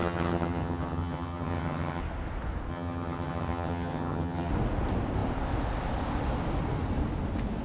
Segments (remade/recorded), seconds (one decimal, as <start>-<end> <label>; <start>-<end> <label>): 0.0-2.0 remade; 2.0-2.7 recorded; 2.7-4.5 remade; 4.5-7.6 recorded